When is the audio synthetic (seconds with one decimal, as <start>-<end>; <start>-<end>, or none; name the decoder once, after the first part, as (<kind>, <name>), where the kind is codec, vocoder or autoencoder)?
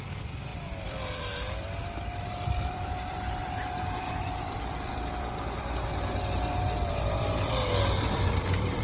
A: 0.0-8.8 (vocoder, BigVGAN v2)